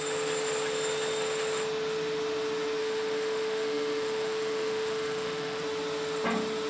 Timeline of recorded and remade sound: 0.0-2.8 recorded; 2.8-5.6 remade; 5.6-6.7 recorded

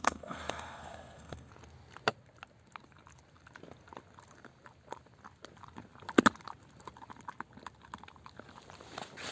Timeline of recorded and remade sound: 0.0-1.5 remade; 1.5-9.3 recorded